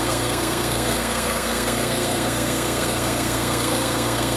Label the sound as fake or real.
fake